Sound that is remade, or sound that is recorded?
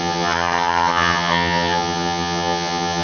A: remade